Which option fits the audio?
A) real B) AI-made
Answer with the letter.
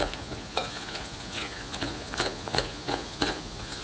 B